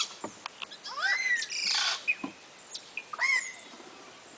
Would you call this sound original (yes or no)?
yes